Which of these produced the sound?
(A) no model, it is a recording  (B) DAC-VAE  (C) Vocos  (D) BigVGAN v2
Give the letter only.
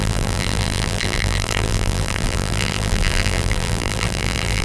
D